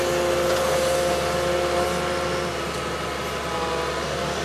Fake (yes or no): no